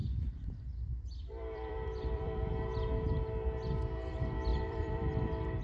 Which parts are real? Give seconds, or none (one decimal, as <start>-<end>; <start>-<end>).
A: 2.5-4.5; 5.1-5.6